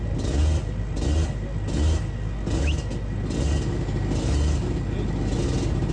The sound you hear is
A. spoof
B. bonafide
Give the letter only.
B